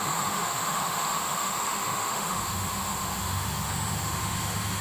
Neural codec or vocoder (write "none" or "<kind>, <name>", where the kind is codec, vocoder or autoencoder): autoencoder, DAC-VAE